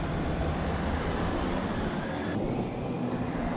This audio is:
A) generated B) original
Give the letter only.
A